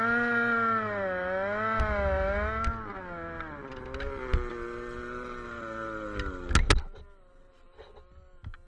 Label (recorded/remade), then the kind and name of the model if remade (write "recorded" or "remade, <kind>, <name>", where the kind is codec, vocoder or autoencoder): recorded